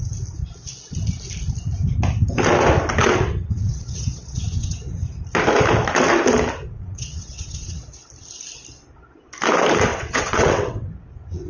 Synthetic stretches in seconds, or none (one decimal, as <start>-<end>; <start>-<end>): 3.0-4.9; 6.6-8.1; 9.9-11.5